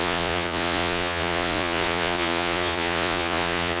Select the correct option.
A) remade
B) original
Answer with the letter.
A